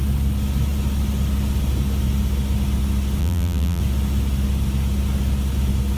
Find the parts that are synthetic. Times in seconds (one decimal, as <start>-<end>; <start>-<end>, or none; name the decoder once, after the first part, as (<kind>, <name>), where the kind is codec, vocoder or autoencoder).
3.2-3.8 (vocoder, BigVGAN v2)